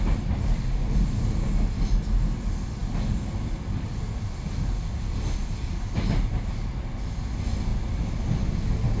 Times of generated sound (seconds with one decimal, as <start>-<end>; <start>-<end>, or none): none